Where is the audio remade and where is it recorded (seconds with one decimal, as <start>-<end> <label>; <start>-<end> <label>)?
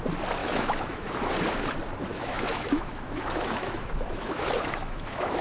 0.0-0.4 recorded; 0.4-1.3 remade; 1.3-2.1 recorded; 2.1-5.4 remade